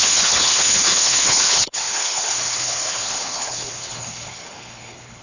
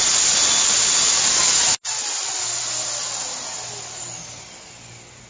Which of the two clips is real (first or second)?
second